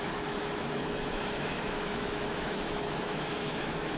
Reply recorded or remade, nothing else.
remade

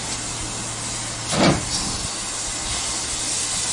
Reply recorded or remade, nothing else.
recorded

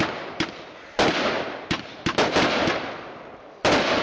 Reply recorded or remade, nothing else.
recorded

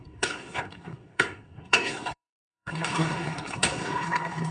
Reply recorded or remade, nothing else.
remade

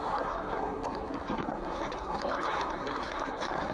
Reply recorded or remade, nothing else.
remade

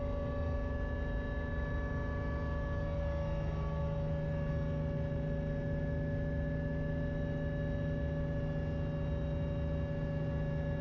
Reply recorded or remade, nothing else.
recorded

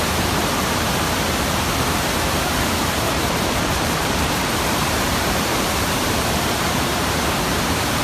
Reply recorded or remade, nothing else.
remade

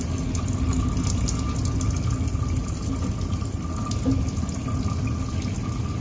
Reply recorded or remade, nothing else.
recorded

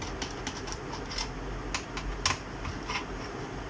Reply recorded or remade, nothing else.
recorded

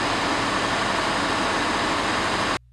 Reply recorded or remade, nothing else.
recorded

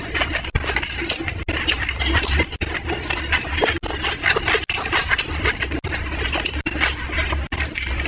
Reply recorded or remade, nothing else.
recorded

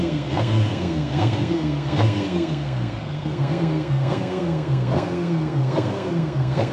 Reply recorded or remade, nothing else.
remade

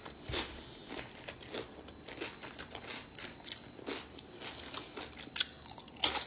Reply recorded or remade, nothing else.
recorded